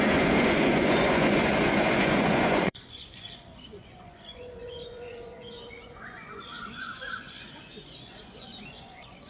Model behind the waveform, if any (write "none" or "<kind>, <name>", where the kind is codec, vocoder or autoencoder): vocoder, Vocos